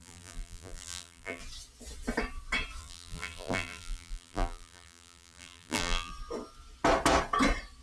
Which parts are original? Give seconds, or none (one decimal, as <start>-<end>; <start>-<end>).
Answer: 1.4-2.8; 6.1-7.8